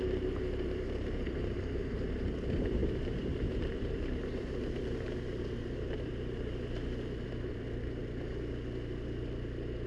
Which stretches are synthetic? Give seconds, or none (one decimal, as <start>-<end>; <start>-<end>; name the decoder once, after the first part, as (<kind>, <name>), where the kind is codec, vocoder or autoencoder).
0.0-9.9 (vocoder, BigVGAN v2)